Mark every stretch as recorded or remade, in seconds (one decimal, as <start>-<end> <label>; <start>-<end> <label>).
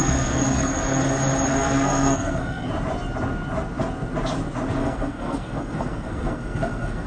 0.0-1.0 remade; 1.0-1.5 recorded; 1.5-2.7 remade; 2.7-4.8 recorded; 4.8-7.1 remade